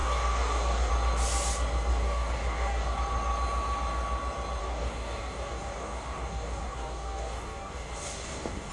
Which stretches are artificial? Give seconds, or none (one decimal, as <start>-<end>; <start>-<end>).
0.0-0.9; 1.9-3.0; 4.6-8.7